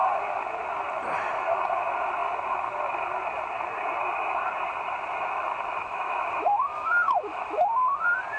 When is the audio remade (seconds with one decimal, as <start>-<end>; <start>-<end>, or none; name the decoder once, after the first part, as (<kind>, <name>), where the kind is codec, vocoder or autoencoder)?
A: 5.8-7.7 (autoencoder, DAC-VAE)